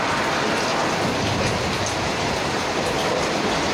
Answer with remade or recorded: recorded